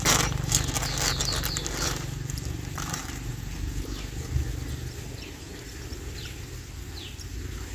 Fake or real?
real